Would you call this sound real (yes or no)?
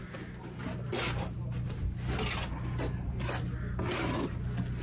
yes